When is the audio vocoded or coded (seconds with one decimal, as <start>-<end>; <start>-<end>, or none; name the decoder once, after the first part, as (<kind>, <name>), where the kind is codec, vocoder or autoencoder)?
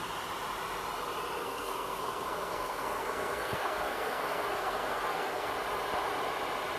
1.4-5.5 (codec, SNAC)